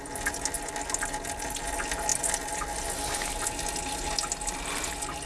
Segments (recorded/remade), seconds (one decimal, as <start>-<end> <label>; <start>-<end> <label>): 0.0-5.3 recorded